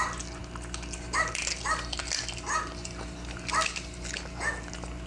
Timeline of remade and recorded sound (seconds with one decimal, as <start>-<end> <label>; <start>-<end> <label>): 0.0-5.1 recorded